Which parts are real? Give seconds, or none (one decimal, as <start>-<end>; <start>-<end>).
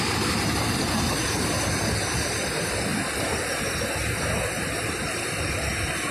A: 0.0-6.1